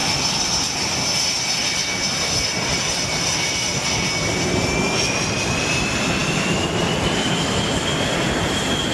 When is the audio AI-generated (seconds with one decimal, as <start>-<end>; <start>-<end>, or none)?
none